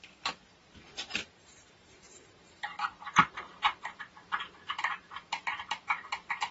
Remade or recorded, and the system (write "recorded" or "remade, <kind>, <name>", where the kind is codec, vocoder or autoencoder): remade, vocoder, BigVGAN v2